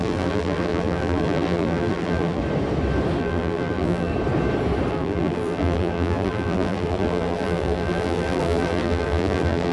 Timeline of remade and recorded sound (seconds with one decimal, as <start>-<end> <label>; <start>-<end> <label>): 0.0-2.4 remade; 2.4-3.2 recorded; 3.2-4.1 remade; 4.1-4.9 recorded; 4.9-9.7 remade